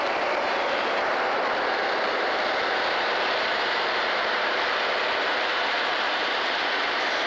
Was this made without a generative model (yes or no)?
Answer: no